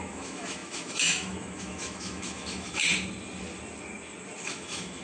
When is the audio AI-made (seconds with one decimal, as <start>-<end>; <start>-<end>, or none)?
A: 0.0-2.8; 4.4-5.0